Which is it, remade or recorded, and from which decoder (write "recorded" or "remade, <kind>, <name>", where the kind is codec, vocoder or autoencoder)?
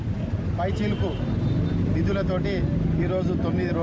recorded